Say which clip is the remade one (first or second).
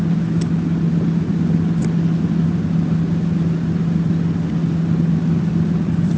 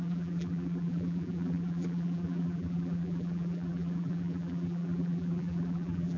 second